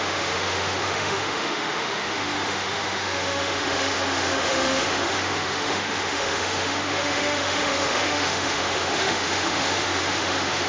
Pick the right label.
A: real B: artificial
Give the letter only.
B